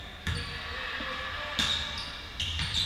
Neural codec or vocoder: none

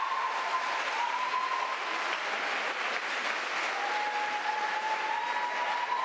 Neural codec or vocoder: none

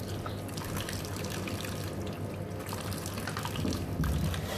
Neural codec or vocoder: none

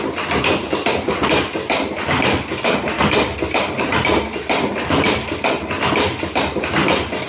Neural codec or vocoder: none